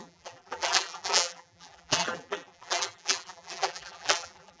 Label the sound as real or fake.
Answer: fake